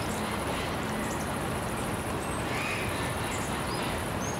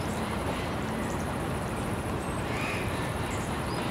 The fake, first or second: second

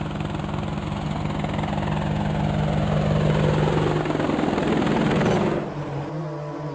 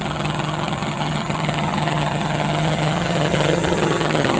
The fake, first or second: second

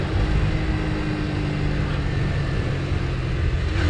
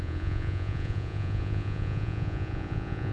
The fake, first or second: second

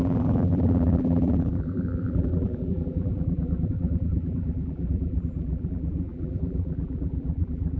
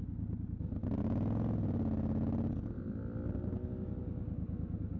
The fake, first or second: first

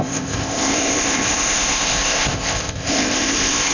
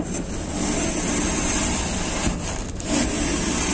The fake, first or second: first